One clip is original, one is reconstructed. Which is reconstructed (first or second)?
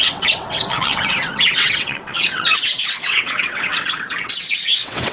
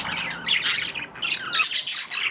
first